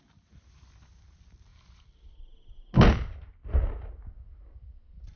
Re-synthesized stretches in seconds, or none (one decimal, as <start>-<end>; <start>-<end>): none